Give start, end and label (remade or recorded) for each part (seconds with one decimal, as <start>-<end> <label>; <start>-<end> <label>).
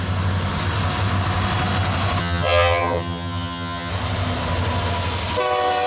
0.0-2.2 recorded; 2.2-3.9 remade; 3.9-5.9 recorded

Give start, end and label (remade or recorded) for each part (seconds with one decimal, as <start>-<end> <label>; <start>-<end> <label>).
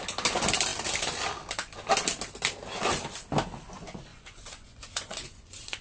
0.0-4.1 recorded; 4.1-5.8 remade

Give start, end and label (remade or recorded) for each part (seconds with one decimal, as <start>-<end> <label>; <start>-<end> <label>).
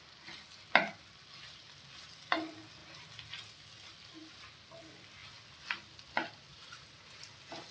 0.0-6.5 recorded; 6.5-7.2 remade; 7.2-7.7 recorded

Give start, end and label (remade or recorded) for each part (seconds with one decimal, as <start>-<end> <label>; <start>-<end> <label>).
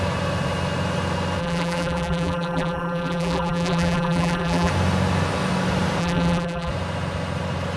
0.0-1.4 recorded; 1.4-4.7 remade; 4.7-6.0 recorded; 6.0-6.7 remade; 6.7-7.8 recorded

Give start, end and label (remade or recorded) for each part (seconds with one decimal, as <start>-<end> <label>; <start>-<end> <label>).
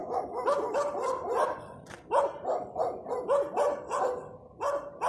0.0-5.1 recorded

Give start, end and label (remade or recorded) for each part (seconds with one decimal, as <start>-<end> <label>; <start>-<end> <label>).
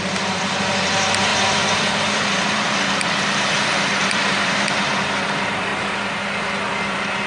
0.0-5.7 remade; 5.7-6.8 recorded; 6.8-7.3 remade